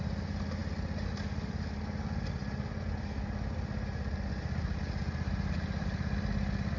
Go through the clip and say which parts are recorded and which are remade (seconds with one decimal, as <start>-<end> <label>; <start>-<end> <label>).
0.0-6.8 recorded